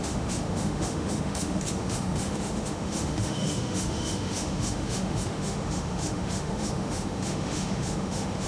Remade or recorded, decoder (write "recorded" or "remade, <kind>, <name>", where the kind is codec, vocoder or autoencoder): remade, autoencoder, DAC-VAE